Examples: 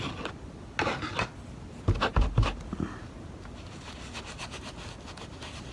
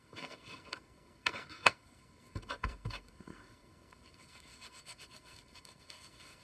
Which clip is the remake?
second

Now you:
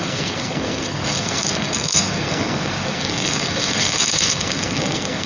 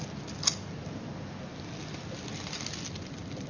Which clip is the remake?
first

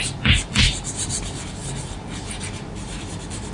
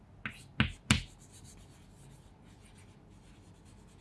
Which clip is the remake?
first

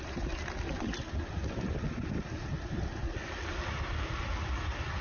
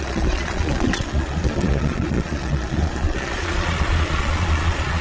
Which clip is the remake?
second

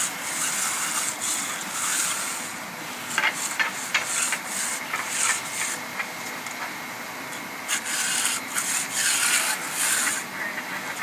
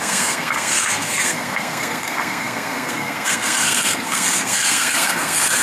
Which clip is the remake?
second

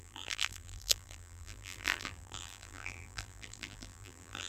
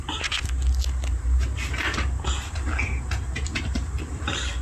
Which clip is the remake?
first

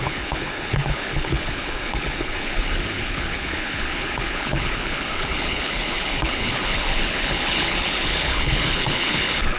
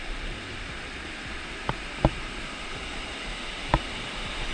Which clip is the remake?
first